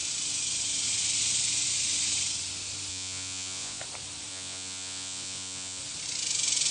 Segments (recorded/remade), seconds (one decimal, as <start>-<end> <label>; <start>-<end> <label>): 0.0-2.9 recorded; 2.9-3.8 remade; 3.8-4.3 recorded; 4.3-5.8 remade; 5.8-6.7 recorded

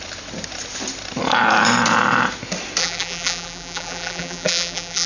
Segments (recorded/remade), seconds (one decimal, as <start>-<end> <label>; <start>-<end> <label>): 0.0-2.8 recorded; 2.8-5.1 remade

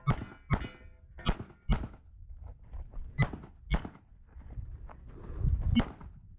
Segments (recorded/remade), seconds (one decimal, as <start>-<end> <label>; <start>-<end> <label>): 0.0-6.4 recorded

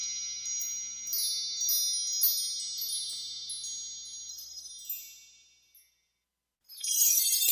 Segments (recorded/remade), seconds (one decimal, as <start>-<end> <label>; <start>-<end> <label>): 0.0-4.3 recorded; 4.3-4.7 remade; 4.7-6.7 recorded; 6.7-7.5 remade

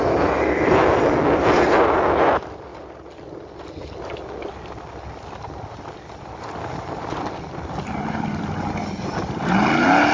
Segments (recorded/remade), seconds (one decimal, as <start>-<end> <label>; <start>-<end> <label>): 0.0-2.7 remade; 2.7-6.4 recorded; 6.4-10.1 remade